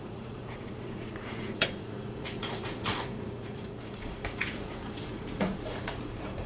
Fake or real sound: fake